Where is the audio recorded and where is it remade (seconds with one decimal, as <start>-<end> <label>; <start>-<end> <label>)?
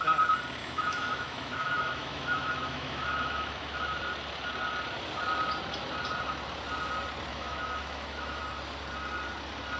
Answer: 0.0-0.6 recorded; 0.6-4.0 remade; 4.0-7.3 recorded; 7.3-8.4 remade; 8.4-9.8 recorded